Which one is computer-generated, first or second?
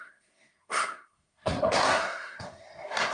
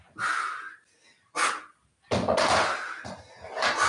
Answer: first